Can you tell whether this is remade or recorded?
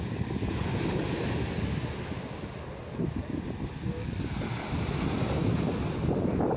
recorded